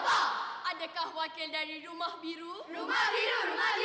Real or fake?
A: real